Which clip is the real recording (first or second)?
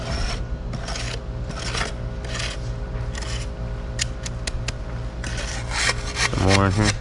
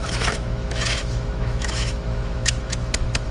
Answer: first